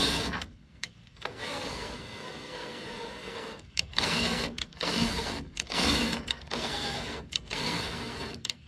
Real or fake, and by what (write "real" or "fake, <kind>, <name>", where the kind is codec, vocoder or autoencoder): fake, codec, SNAC